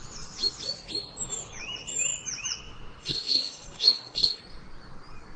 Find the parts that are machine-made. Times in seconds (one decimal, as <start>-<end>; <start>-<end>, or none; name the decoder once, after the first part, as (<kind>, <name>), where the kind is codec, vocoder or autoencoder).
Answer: 3.0-4.4 (codec, SNAC)